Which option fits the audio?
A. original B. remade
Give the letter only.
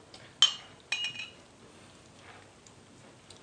A